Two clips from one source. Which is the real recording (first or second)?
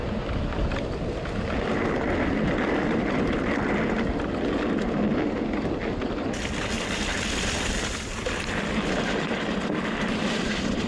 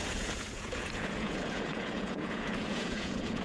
first